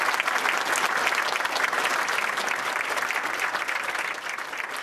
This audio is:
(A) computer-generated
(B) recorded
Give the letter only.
B